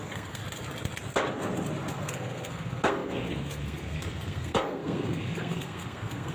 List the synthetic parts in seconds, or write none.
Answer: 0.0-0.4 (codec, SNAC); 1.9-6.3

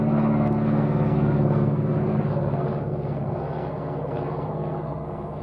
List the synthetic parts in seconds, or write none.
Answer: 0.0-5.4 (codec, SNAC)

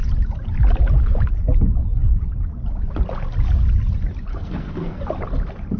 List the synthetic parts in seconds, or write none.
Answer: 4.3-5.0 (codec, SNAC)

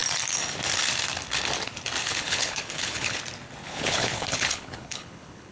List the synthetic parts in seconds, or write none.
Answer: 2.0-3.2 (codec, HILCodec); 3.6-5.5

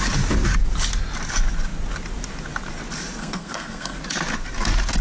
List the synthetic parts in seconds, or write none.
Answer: 3.2-4.0 (codec, SNAC)

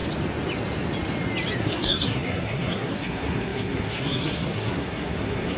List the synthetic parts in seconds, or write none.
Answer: 1.6-5.6 (codec, SNAC)

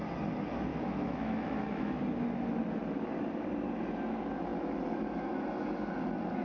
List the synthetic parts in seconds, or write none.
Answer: 0.7-2.0 (autoencoder, DAC-VAE)